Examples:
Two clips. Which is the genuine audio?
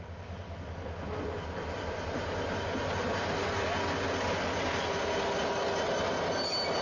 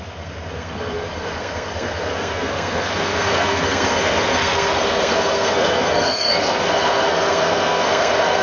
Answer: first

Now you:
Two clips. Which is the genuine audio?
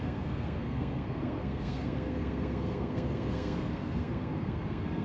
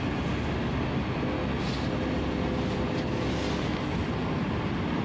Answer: second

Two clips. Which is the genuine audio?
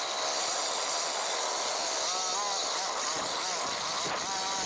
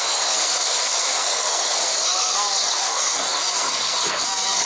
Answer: first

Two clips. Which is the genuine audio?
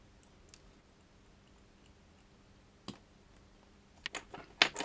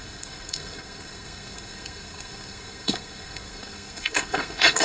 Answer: first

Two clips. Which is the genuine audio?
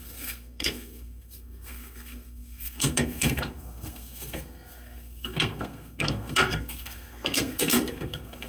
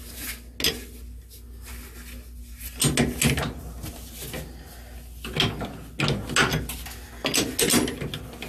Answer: second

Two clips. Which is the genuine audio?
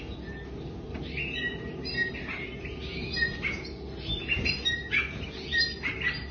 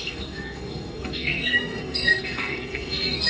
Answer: first